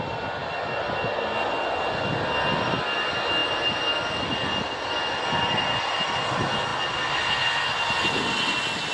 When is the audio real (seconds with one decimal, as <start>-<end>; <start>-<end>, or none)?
0.0-8.9